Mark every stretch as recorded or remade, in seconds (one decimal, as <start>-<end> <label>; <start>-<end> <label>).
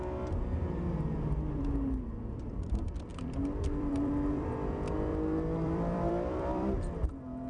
0.0-3.1 recorded; 3.1-4.5 remade; 4.5-5.1 recorded; 5.1-6.8 remade; 6.8-7.5 recorded